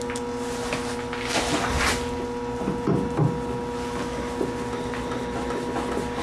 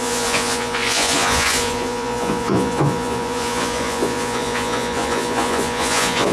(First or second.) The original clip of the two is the first